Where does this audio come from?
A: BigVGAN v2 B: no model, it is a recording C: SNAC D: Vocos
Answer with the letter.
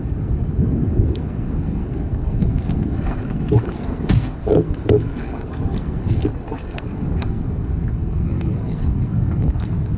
C